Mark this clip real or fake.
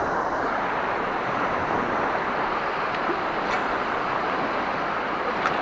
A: real